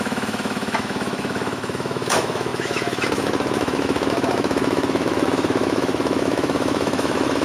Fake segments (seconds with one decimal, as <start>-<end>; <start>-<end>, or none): 0.0-7.4